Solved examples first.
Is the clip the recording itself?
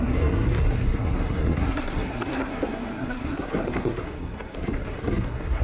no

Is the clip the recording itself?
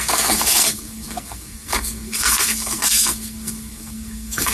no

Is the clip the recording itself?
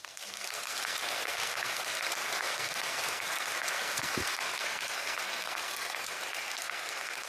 no